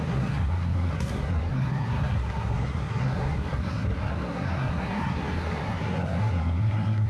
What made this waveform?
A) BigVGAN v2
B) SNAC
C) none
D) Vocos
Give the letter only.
B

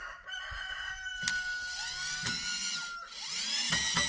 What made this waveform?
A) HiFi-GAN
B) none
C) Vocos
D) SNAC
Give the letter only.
B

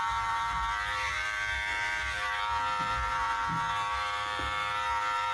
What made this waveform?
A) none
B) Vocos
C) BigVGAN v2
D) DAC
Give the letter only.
C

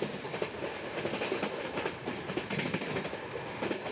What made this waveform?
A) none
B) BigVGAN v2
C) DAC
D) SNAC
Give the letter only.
A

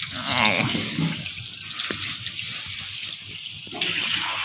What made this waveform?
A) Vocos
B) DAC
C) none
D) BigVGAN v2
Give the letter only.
C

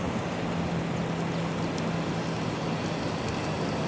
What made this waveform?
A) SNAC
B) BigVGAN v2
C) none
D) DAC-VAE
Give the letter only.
C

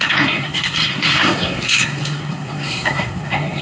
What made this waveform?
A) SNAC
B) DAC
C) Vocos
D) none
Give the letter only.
A